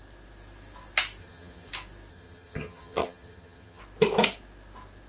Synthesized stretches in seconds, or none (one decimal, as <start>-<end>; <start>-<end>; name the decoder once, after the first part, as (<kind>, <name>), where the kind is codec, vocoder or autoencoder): 1.2-1.7 (vocoder, HiFi-GAN); 2.1-3.8